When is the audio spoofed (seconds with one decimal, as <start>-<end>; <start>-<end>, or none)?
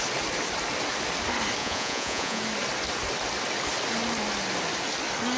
1.6-2.4